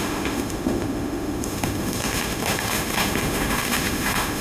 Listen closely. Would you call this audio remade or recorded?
remade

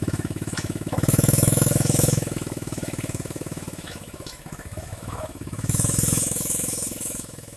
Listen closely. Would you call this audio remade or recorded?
remade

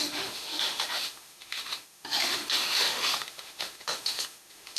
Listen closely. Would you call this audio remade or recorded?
remade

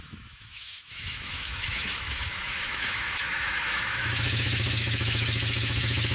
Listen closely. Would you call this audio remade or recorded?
remade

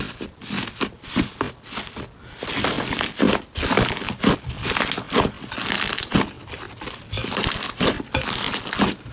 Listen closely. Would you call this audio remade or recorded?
recorded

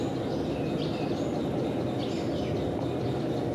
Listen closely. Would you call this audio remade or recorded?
recorded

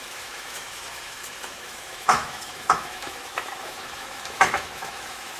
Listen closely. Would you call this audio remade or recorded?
remade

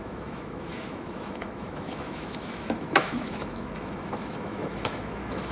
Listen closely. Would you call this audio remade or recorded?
remade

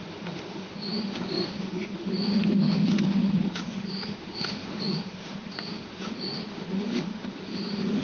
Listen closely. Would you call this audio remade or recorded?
remade